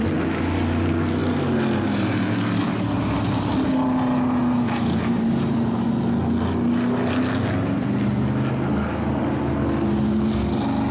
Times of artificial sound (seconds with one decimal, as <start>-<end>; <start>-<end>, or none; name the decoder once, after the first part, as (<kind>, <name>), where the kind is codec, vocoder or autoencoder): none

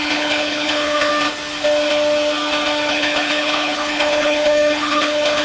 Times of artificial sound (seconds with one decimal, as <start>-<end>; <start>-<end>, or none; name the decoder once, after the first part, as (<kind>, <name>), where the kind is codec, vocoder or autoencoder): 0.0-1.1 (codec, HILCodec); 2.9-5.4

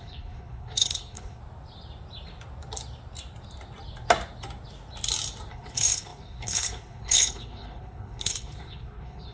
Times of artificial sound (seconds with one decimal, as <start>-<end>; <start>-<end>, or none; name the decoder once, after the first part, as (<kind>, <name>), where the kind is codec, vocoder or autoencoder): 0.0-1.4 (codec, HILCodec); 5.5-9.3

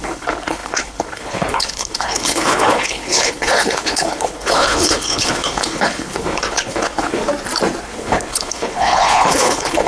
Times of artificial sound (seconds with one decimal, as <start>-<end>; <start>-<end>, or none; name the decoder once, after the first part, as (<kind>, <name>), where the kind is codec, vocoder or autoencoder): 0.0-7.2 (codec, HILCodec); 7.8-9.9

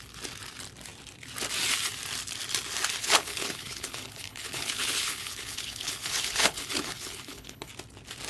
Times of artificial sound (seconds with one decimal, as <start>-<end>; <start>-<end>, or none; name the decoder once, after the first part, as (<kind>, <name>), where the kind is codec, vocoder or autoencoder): 3.0-7.7 (codec, HILCodec)

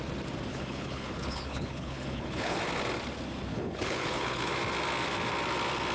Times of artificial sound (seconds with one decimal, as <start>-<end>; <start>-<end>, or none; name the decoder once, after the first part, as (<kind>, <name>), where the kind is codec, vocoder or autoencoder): 0.5-2.6 (codec, HILCodec); 3.5-4.5